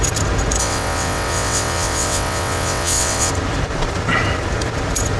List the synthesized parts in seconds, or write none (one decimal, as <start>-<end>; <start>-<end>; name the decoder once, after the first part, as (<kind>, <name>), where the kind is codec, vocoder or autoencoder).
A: 0.6-3.3 (vocoder, WaveNeXt)